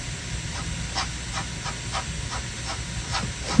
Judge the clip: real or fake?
real